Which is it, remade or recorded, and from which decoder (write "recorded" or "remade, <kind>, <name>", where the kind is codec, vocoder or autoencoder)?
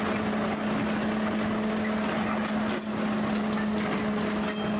recorded